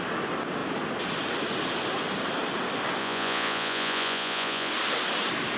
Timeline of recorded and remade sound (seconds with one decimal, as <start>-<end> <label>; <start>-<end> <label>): 0.0-3.0 recorded; 3.0-4.7 remade; 4.7-5.6 recorded